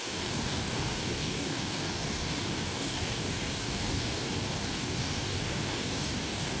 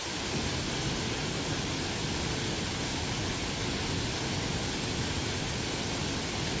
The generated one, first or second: first